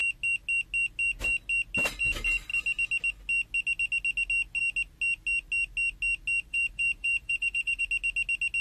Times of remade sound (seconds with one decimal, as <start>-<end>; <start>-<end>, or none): 6.5-7.8

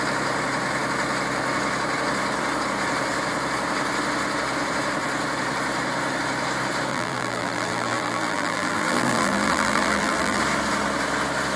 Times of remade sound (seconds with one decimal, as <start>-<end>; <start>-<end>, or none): 6.9-10.4